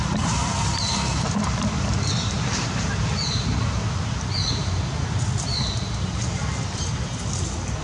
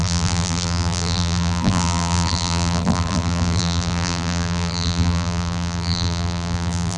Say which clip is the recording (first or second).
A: first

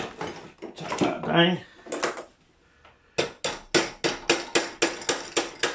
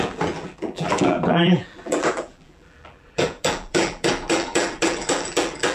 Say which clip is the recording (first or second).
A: first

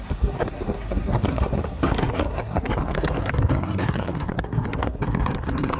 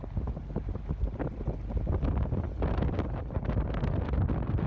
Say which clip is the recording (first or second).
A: second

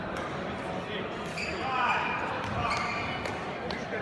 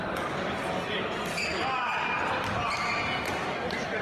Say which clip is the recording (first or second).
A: second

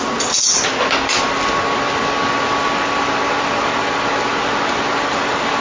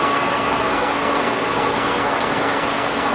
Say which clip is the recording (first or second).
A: first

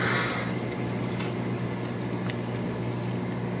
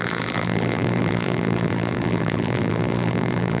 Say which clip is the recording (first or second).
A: first